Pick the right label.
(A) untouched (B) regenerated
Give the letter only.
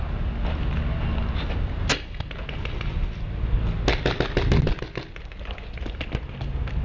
A